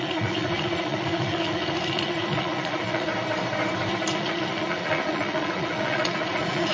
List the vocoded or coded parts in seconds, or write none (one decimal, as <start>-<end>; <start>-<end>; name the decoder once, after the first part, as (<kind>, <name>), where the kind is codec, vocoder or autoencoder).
0.0-3.1 (vocoder, Vocos); 4.1-6.7